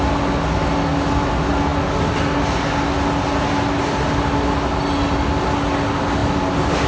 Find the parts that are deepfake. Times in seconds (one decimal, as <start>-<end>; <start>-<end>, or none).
6.2-6.9